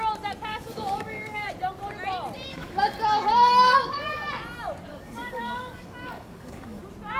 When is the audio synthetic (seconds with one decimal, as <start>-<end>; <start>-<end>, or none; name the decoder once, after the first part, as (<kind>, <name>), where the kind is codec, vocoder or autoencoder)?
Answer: 0.5-1.5 (codec, DAC); 2.5-4.3; 4.9-6.8